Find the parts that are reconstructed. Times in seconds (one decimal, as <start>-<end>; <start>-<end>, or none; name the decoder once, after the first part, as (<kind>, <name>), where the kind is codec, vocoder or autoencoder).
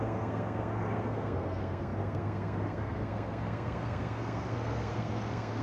0.0-5.6 (codec, SNAC)